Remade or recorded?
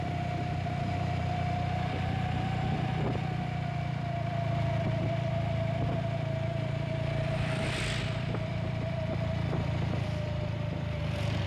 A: remade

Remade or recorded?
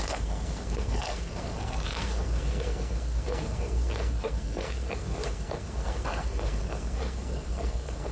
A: remade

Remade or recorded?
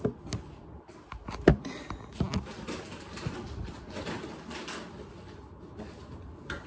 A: recorded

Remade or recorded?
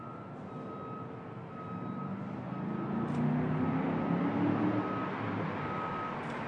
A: recorded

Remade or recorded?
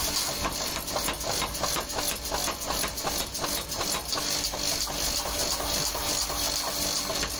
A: recorded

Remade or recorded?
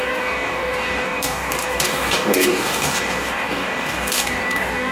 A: remade